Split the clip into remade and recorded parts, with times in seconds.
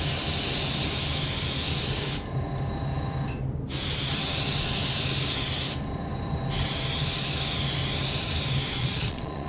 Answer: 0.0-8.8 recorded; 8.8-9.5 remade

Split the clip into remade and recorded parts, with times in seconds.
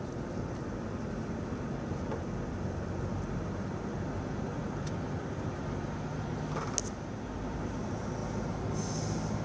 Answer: 0.0-9.4 recorded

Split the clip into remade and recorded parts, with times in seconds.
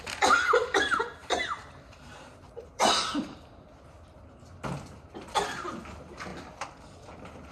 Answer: 0.0-1.2 recorded; 1.2-3.4 remade; 3.4-7.5 recorded